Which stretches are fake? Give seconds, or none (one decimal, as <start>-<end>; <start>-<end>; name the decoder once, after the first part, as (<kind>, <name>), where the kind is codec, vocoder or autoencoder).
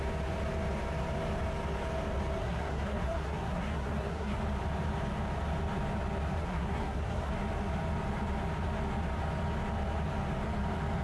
2.4-4.4 (codec, SNAC); 6.4-7.3